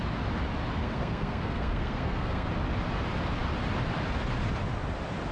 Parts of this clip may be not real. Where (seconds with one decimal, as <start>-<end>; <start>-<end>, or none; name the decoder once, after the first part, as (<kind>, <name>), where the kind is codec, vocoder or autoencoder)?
0.8-2.5 (codec, SNAC)